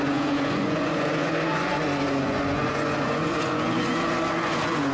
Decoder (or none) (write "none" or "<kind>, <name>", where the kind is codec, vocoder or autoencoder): vocoder, Vocos